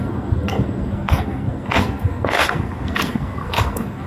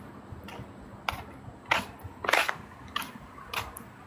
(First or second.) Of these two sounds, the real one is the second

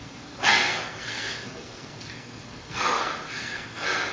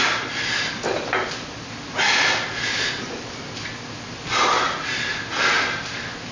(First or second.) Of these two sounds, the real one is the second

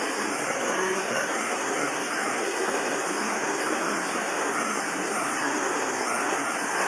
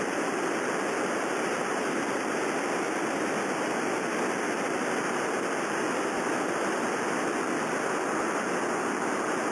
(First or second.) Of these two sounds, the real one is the second